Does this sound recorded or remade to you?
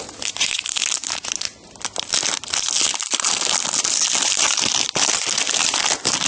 recorded